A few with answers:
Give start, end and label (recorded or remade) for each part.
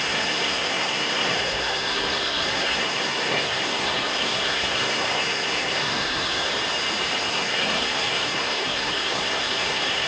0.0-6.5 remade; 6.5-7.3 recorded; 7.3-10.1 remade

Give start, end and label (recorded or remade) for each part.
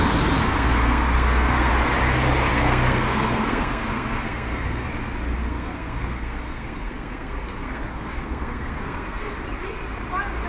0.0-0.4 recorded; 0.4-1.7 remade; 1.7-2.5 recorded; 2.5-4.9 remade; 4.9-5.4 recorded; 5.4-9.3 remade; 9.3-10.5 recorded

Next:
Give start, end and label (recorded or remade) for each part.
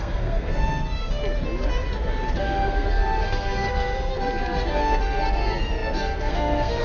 0.0-1.2 remade; 1.2-2.4 recorded; 2.4-4.1 remade; 4.1-4.7 recorded; 4.7-6.8 remade